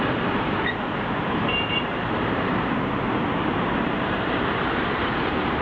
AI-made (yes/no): yes